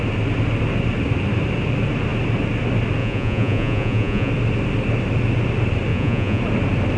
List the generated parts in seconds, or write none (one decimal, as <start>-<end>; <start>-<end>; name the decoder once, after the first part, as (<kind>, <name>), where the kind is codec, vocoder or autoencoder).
3.0-4.3 (vocoder, Vocos); 5.9-6.4